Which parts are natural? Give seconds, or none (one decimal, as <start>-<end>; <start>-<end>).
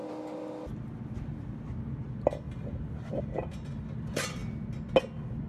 0.0-1.9; 4.4-5.0